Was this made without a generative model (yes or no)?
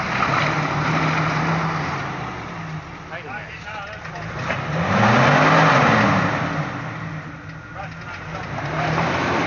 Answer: yes